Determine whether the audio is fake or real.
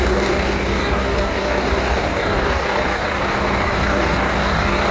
fake